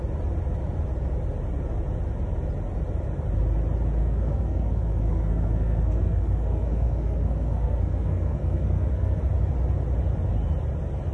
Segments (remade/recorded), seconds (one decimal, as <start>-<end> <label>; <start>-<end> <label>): 0.0-4.0 recorded; 4.0-9.2 remade; 9.2-11.1 recorded